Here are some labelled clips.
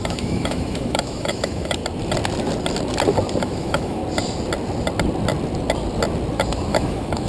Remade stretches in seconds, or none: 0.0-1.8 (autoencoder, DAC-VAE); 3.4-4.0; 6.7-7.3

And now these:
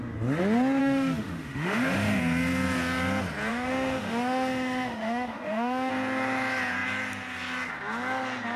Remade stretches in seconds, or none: 0.8-2.2 (autoencoder, DAC-VAE); 3.5-5.9

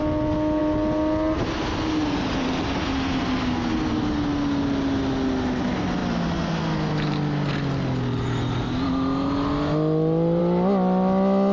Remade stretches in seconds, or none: none

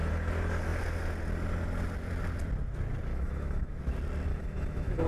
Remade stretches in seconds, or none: 3.1-3.8 (autoencoder, DAC-VAE); 4.3-5.1

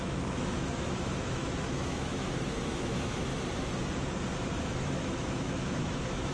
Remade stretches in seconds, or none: 0.0-3.3 (autoencoder, DAC-VAE); 4.6-6.3

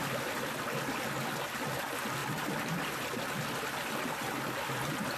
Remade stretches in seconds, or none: none